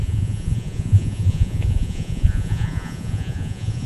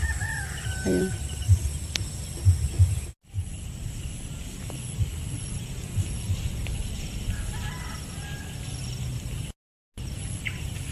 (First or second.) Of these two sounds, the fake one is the first